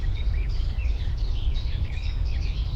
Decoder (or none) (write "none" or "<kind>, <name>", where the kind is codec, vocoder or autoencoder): codec, DAC